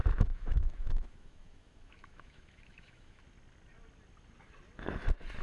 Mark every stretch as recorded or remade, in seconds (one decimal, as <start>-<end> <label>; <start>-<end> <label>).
0.0-3.2 remade; 3.2-5.4 recorded